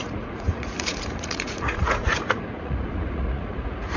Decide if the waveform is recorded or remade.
remade